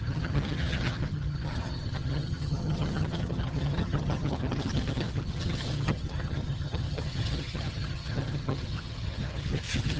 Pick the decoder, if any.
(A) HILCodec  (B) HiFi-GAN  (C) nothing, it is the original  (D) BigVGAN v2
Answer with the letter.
B